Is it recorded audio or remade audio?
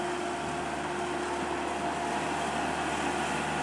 recorded